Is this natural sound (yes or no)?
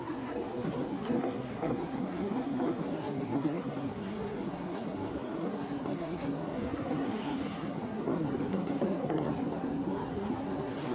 no